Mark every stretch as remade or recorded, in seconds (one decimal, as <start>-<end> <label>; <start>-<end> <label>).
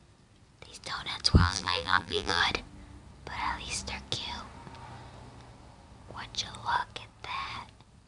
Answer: 0.0-1.4 recorded; 1.4-2.4 remade; 2.4-8.1 recorded